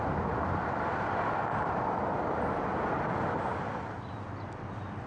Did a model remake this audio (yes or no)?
no